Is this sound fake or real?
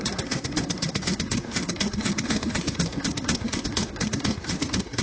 fake